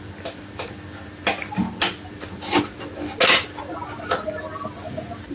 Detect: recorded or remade recorded